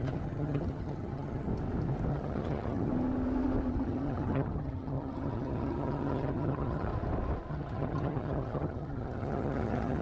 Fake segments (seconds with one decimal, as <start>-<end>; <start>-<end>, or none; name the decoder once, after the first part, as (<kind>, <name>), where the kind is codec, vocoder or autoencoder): 0.0-1.5 (vocoder, HiFi-GAN); 2.1-2.9; 3.7-6.9; 7.5-10.0